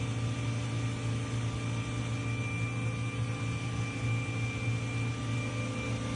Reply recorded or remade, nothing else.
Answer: recorded